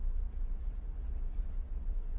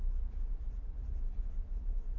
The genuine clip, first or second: first